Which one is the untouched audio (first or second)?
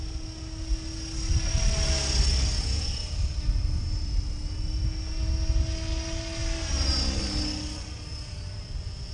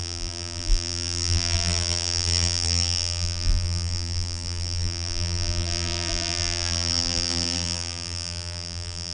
first